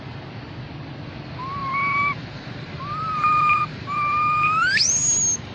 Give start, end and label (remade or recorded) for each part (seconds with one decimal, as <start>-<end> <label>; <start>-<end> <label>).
0.0-1.6 recorded; 1.6-4.9 remade; 4.9-5.5 recorded